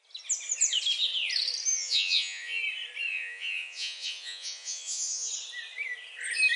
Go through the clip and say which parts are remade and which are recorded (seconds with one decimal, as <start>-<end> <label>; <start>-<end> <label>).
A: 0.0-1.7 recorded; 1.7-2.6 remade; 2.6-3.1 recorded; 3.1-5.3 remade; 5.3-6.6 recorded